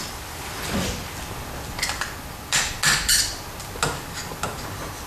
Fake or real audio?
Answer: real